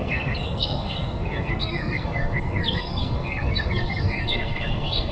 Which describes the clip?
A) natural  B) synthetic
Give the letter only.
B